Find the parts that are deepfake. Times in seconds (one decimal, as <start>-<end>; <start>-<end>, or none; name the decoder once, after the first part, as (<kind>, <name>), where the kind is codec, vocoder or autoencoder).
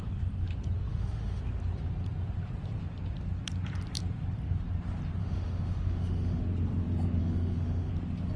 0.9-1.4 (autoencoder, DAC-VAE); 5.2-6.4; 7.2-7.9